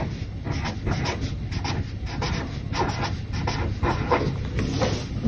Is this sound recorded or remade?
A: recorded